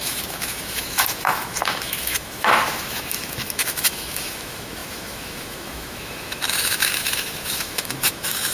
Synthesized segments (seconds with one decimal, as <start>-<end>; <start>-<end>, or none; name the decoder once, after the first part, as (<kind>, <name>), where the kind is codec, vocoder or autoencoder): 0.0-8.5 (autoencoder, DAC-VAE)